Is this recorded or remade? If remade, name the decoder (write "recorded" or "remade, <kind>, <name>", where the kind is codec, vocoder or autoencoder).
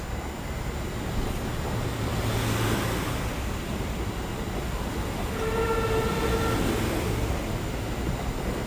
recorded